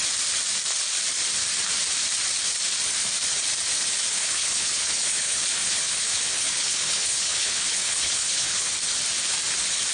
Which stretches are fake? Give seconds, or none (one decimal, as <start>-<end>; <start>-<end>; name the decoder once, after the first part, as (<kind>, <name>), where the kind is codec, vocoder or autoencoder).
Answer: 4.1-8.7 (codec, HILCodec)